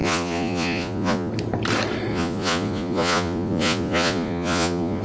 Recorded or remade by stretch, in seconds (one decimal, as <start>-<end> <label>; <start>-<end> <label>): 0.0-1.3 remade; 1.3-2.1 recorded; 2.1-5.0 remade